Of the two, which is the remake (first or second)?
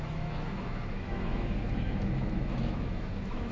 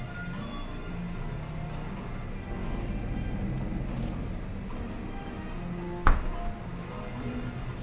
first